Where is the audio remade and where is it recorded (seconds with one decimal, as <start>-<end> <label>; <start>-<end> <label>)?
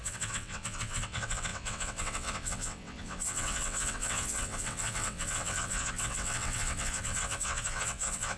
0.0-8.4 remade